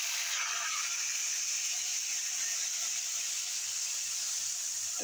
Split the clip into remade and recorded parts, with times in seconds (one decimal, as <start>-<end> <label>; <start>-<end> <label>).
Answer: 0.0-5.0 recorded